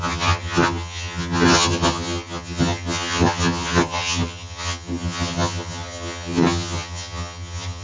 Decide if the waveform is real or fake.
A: fake